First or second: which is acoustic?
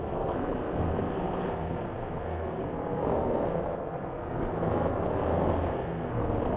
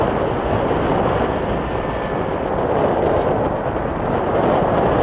second